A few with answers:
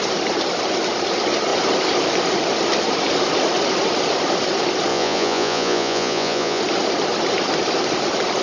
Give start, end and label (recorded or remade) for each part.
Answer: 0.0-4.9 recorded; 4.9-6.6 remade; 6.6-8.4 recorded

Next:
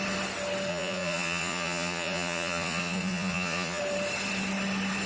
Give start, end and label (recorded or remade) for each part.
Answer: 0.0-0.7 recorded; 0.7-3.8 remade; 3.8-5.1 recorded

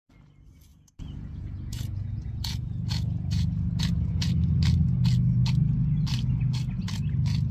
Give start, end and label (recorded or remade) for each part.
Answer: 0.0-0.7 recorded; 0.7-4.3 remade; 4.3-7.5 recorded

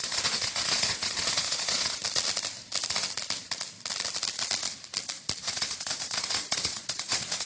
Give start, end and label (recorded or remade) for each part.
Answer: 0.0-2.0 remade; 2.0-5.4 recorded; 5.4-7.5 remade

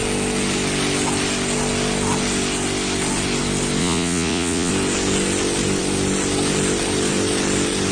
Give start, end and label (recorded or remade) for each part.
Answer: 0.0-3.8 recorded; 3.8-4.7 remade; 4.7-7.9 recorded